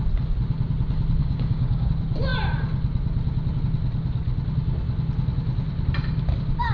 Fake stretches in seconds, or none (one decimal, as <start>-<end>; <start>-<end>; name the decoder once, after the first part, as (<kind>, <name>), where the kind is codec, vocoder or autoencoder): 1.2-1.9 (codec, DAC)